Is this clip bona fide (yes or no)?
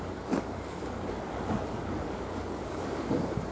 no